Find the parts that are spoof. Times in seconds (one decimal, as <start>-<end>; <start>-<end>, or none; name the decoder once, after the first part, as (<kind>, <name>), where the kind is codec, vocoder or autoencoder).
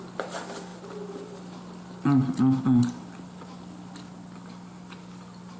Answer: none